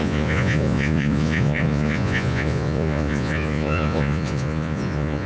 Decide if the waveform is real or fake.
fake